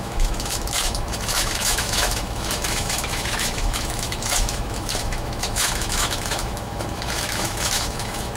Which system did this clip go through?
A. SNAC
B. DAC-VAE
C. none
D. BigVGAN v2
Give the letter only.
B